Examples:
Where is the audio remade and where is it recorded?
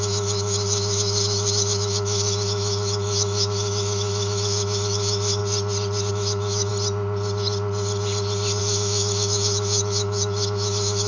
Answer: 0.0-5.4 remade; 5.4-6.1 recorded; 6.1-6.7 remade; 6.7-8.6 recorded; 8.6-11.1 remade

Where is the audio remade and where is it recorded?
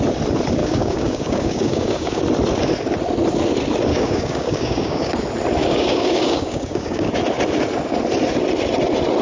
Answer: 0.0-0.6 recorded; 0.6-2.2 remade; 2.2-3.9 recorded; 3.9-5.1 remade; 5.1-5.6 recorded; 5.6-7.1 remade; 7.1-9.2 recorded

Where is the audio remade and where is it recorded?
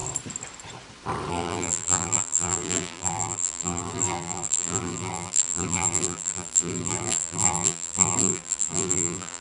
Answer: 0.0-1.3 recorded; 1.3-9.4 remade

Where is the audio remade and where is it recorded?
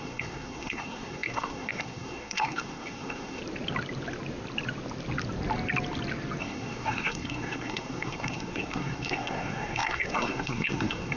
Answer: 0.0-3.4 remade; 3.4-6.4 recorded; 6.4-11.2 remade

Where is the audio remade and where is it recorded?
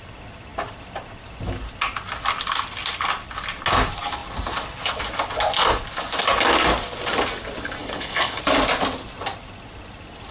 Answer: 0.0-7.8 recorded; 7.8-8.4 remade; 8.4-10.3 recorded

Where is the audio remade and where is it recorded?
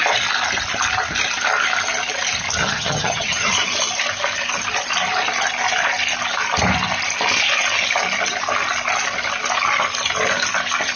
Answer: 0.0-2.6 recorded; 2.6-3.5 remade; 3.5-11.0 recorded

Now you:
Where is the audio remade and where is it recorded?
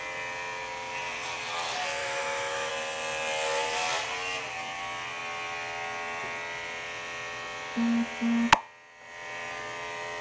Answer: 0.0-2.0 recorded; 2.0-2.7 remade; 2.7-10.2 recorded